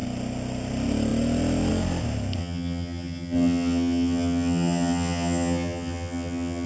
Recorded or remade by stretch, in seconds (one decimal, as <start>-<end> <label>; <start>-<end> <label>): 0.0-2.4 recorded; 2.4-6.7 remade